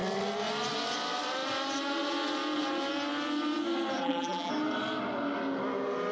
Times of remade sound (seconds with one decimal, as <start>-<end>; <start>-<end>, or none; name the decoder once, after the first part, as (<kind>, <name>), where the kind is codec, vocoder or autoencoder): 4.0-4.5 (vocoder, BigVGAN v2)